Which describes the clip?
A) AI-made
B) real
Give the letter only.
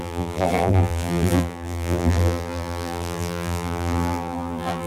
A